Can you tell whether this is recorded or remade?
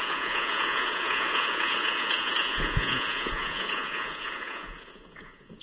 remade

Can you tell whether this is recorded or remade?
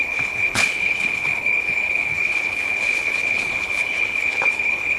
remade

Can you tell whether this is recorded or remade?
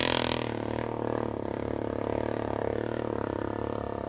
recorded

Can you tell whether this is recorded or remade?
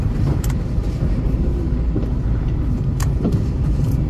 remade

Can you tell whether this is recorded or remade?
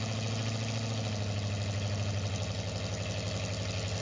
recorded